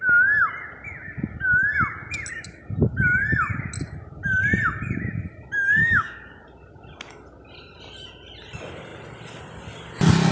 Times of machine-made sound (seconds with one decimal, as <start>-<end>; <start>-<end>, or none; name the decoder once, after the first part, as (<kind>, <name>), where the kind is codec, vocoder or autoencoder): 5.8-6.4 (codec, DAC)